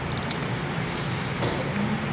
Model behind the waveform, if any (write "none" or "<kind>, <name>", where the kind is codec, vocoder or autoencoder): none